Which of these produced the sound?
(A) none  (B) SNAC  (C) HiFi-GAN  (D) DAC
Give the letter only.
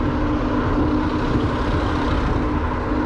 A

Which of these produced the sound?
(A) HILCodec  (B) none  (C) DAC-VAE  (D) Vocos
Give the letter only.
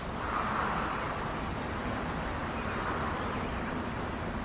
B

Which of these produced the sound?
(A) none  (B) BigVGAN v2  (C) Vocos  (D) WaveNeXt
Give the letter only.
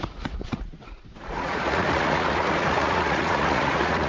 C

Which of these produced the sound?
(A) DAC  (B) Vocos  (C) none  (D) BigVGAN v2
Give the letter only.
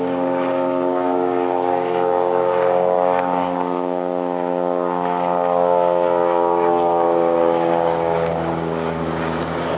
A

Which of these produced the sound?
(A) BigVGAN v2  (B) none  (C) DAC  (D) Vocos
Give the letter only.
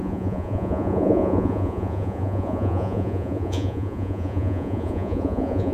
D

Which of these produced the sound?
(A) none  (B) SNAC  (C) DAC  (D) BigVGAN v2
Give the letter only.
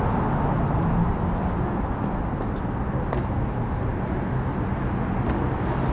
A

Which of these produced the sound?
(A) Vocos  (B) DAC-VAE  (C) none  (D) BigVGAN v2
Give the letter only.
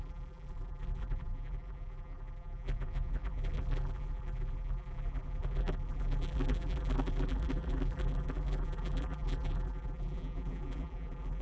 D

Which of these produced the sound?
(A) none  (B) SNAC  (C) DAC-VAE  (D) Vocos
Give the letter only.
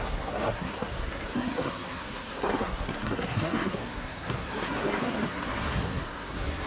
B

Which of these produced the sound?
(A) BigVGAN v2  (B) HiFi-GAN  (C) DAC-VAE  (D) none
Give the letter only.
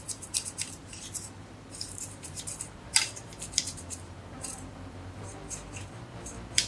A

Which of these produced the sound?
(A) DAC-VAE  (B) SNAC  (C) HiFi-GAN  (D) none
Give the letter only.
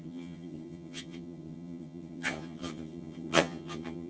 C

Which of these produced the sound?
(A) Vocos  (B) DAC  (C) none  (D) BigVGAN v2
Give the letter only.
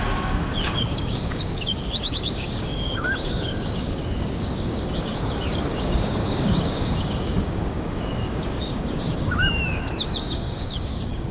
B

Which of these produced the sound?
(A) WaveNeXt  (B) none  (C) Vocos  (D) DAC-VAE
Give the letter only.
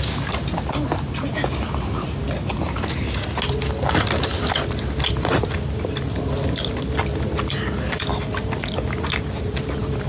B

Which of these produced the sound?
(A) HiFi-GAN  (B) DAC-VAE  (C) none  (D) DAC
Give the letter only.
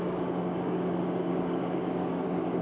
D